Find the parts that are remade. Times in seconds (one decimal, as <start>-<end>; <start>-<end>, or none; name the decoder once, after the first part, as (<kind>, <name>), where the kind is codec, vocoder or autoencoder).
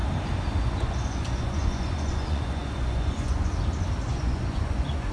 0.6-3.5 (vocoder, Vocos); 4.1-5.1